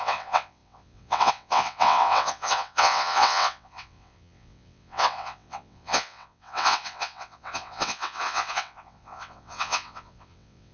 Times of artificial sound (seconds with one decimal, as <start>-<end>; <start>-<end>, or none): 0.0-10.7